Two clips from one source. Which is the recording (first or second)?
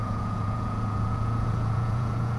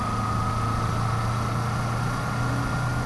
second